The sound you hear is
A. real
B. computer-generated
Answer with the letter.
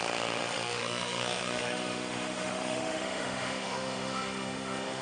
B